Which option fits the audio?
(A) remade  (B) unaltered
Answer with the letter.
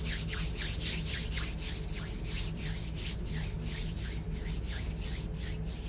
B